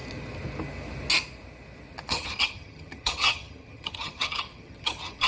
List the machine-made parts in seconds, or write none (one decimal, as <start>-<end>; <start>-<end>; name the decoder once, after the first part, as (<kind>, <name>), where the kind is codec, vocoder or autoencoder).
2.1-5.3 (vocoder, HiFi-GAN)